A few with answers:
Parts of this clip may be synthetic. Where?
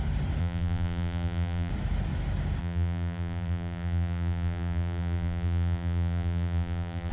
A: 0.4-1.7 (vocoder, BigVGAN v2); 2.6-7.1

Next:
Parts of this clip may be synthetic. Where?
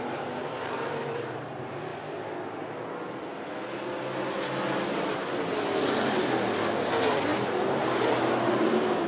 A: 0.0-1.9 (vocoder, BigVGAN v2); 6.8-9.1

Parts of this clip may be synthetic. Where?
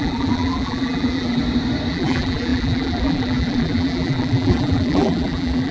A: 0.0-1.4 (vocoder, BigVGAN v2); 1.9-5.7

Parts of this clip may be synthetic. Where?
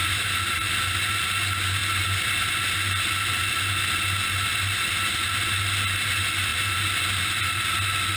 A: 0.0-0.7 (vocoder, BigVGAN v2)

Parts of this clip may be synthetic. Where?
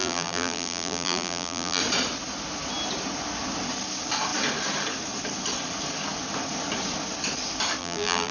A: 0.0-1.8 (vocoder, BigVGAN v2); 7.8-8.3